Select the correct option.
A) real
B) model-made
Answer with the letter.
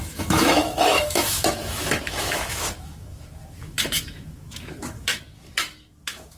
B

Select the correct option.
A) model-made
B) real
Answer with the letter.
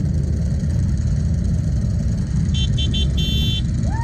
B